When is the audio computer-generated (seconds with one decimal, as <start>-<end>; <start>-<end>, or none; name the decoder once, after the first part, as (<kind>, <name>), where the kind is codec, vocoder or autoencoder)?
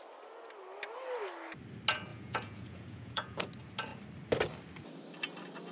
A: 2.1-3.4 (vocoder, Vocos)